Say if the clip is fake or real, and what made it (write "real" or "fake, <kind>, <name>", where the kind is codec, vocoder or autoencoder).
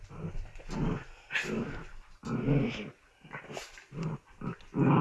real